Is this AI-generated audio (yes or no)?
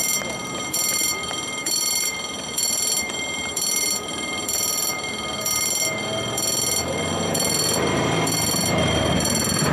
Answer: yes